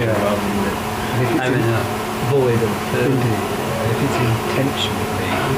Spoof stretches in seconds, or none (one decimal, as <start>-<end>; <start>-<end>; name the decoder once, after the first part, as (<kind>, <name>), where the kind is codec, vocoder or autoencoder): none